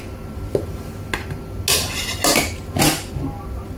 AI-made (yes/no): no